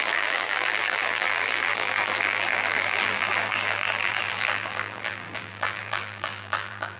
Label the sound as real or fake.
fake